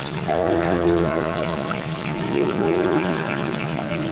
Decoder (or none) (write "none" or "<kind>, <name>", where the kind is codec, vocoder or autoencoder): vocoder, Vocos